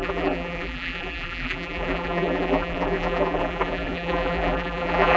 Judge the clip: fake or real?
fake